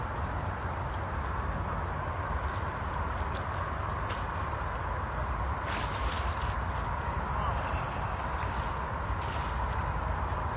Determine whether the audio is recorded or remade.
recorded